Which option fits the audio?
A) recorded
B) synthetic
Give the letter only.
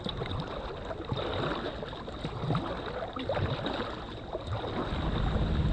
A